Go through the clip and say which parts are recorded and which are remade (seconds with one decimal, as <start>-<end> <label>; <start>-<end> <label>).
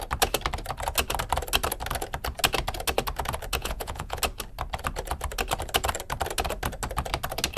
0.0-3.6 recorded; 3.6-4.2 remade; 4.2-7.6 recorded